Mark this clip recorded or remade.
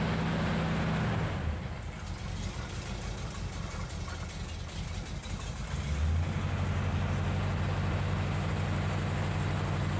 recorded